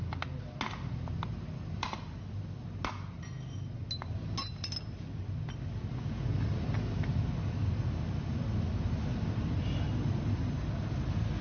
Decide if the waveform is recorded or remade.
recorded